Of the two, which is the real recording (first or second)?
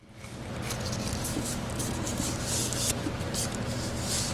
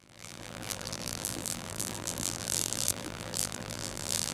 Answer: first